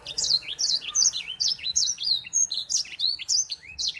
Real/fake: fake